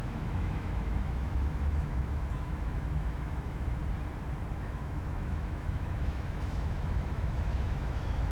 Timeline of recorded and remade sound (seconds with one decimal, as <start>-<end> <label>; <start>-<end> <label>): 0.0-3.8 remade; 3.8-4.5 recorded; 4.5-8.3 remade